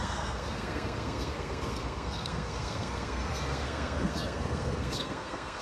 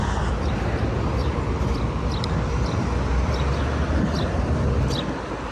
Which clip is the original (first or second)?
second